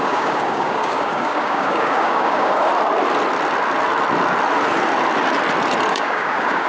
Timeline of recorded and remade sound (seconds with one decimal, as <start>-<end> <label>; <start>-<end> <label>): 0.0-2.7 remade; 2.7-5.9 recorded; 5.9-6.7 remade